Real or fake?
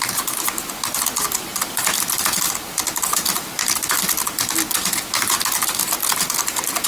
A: real